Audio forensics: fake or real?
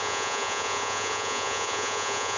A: fake